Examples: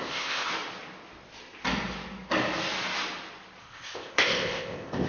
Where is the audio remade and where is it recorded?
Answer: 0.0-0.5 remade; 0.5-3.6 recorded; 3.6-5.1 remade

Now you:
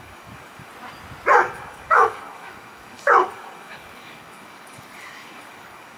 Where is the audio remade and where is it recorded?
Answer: 0.0-0.7 remade; 0.7-1.3 recorded; 1.3-6.0 remade